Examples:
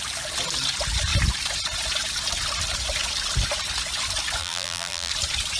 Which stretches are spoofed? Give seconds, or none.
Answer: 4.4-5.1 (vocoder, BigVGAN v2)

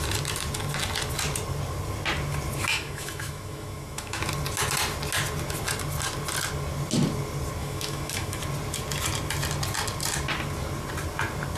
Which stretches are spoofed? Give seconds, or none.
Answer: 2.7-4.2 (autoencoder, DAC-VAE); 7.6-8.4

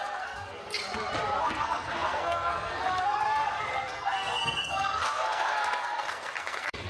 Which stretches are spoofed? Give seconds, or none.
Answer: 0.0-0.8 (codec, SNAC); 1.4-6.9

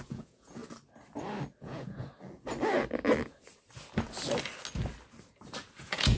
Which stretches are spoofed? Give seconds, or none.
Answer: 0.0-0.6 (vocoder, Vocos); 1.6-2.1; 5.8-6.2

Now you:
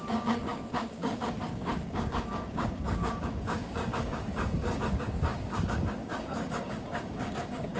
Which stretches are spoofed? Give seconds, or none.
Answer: 0.0-7.8 (codec, DAC)

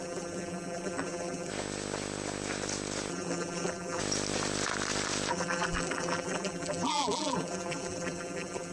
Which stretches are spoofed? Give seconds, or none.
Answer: 0.0-1.5 (vocoder, BigVGAN v2); 3.1-4.0; 5.3-8.7

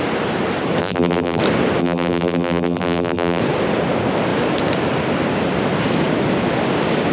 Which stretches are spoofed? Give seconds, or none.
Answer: 0.8-1.4 (vocoder, BigVGAN v2); 1.8-3.4

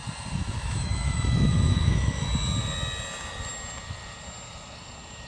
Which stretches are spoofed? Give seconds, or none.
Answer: 0.4-2.2 (autoencoder, DAC-VAE)